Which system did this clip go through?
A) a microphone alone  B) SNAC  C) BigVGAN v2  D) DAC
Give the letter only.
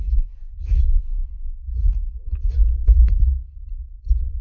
C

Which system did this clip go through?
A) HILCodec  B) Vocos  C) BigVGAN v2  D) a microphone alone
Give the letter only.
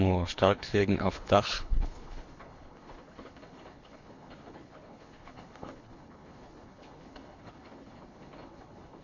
A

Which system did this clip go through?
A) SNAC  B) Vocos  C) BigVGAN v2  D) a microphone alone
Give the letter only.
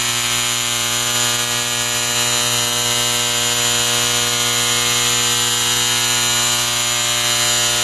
D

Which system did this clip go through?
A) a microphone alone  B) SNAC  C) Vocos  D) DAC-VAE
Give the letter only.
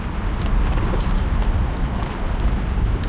A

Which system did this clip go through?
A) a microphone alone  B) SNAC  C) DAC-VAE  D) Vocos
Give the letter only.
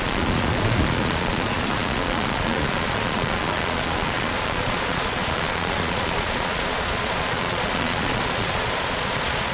D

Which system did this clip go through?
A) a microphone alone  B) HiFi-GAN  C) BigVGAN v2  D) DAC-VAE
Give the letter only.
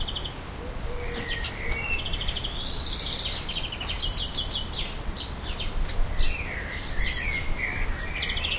C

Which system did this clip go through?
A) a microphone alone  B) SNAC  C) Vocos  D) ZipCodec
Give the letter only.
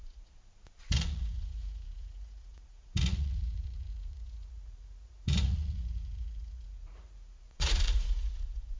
C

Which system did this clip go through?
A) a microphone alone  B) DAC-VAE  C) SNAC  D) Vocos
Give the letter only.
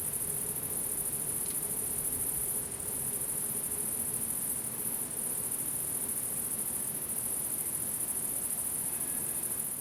A